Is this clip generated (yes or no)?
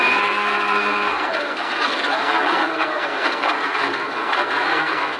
yes